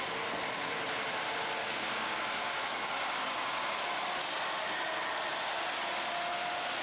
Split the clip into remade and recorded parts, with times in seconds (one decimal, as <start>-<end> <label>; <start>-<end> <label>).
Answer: 0.0-1.6 recorded; 1.6-3.8 remade; 3.8-6.8 recorded